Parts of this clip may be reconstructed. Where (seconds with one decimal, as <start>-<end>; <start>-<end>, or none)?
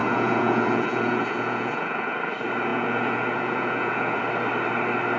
0.0-2.2; 2.7-4.2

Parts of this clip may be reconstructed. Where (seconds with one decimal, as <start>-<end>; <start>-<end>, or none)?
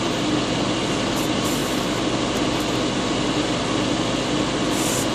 none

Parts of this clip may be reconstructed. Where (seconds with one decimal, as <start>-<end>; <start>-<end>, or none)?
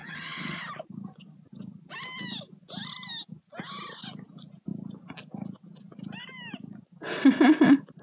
0.0-0.6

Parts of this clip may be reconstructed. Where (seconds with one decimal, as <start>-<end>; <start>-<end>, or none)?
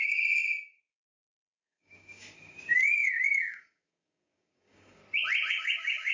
0.0-5.0; 5.5-6.1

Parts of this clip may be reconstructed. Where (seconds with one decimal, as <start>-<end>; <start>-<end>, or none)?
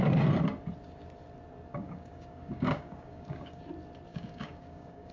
1.7-3.6; 4.1-5.1